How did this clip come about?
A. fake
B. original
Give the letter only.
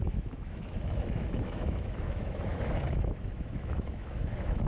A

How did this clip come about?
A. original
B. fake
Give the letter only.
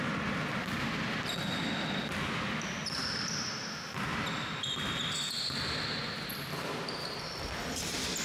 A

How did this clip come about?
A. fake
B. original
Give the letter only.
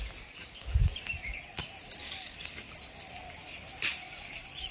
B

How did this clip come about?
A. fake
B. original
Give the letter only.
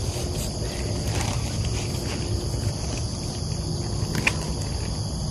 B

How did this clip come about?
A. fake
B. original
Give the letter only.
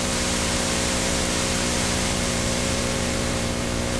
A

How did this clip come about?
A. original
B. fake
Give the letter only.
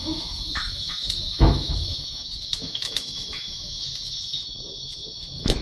B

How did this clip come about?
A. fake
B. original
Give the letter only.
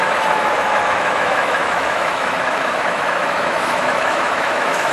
A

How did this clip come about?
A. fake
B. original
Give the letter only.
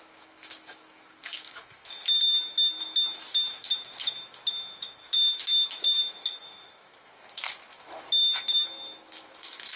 A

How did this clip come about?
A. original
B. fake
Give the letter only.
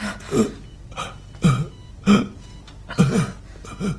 A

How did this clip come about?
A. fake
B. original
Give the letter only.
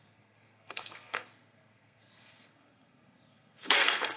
A